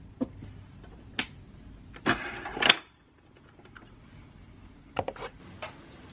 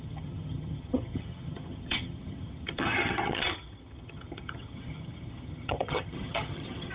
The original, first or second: first